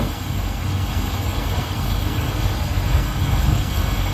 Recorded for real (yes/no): no